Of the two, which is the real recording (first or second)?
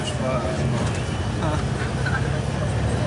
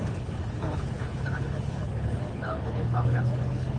first